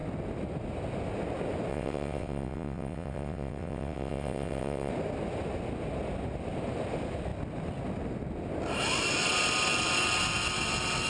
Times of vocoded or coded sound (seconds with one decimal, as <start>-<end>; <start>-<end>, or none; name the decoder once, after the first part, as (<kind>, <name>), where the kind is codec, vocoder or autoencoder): 1.7-4.9 (vocoder, WaveNeXt)